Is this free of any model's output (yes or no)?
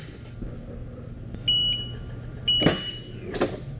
yes